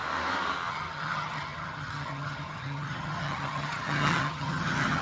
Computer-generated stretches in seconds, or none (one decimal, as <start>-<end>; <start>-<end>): 0.7-5.0